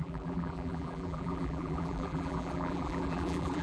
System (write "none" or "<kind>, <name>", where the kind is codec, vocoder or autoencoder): vocoder, BigVGAN v2